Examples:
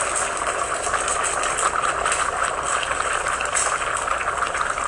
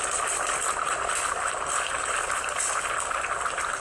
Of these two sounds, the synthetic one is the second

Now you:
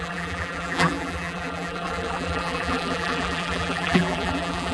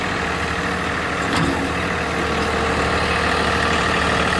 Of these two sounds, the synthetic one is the first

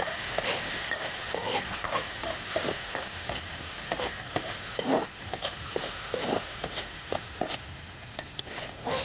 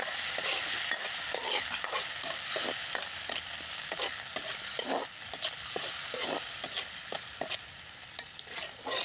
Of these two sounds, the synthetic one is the first